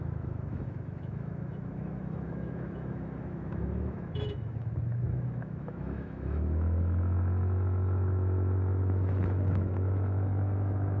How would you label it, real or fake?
fake